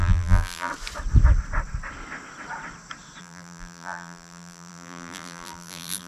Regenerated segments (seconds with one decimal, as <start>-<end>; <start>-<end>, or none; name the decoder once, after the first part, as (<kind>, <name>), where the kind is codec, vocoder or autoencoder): 0.0-0.7 (vocoder, BigVGAN v2); 3.2-6.1